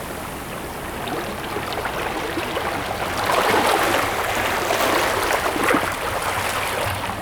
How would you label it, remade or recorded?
recorded